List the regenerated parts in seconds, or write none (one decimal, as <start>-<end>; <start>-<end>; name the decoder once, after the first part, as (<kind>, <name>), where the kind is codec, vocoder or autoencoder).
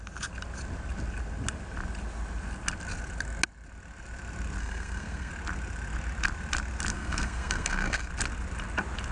4.6-5.3 (codec, SNAC); 6.9-8.1